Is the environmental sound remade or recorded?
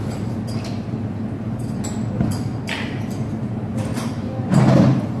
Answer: recorded